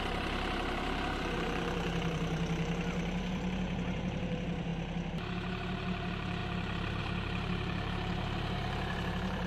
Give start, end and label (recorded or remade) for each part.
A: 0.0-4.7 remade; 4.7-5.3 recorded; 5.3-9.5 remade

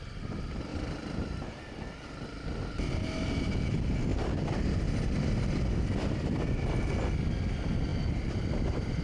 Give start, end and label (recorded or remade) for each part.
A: 0.0-0.7 recorded; 0.7-1.3 remade; 1.3-4.1 recorded; 4.1-6.8 remade; 6.8-9.0 recorded

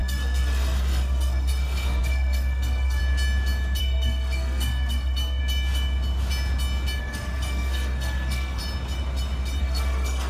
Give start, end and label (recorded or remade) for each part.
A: 0.0-3.0 remade; 3.0-3.8 recorded; 3.8-5.4 remade; 5.4-7.0 recorded; 7.0-8.6 remade; 8.6-9.6 recorded; 9.6-10.3 remade